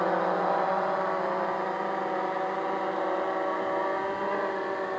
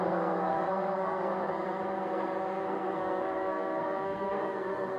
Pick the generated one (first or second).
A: second